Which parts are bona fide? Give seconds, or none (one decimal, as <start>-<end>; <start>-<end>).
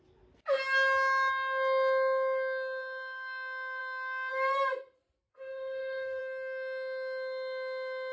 0.0-5.3; 6.2-8.1